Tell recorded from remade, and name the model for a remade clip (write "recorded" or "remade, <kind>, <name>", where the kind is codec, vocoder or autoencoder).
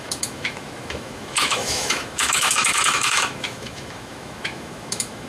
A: remade, autoencoder, DAC-VAE